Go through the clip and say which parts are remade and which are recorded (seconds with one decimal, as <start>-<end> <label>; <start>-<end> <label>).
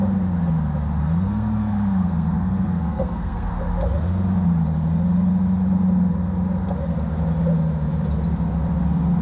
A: 0.0-1.0 recorded; 1.0-3.5 remade; 3.5-9.2 recorded